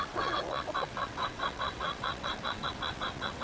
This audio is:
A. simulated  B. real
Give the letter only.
A